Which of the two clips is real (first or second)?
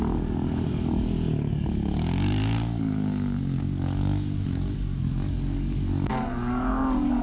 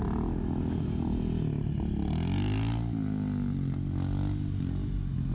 second